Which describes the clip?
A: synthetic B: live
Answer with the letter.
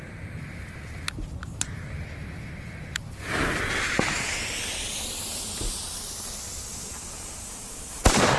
B